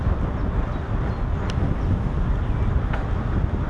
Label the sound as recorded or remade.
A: recorded